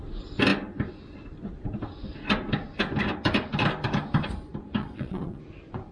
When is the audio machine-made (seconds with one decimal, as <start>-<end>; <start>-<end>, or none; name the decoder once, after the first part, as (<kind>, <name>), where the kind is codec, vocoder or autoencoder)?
4.8-5.4 (vocoder, WaveNeXt)